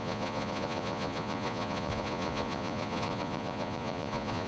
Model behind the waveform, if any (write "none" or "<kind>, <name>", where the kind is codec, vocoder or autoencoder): vocoder, Vocos